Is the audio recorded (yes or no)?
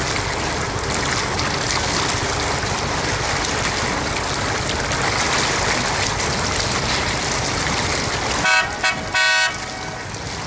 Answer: yes